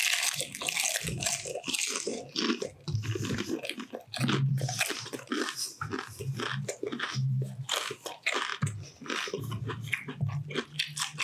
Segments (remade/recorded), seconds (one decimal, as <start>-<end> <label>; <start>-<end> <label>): 0.0-11.2 recorded